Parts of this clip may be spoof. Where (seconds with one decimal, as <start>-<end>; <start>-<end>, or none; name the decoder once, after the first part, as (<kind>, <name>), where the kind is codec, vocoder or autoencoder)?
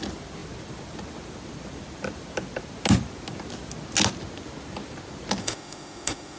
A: 5.4-6.4 (autoencoder, DAC-VAE)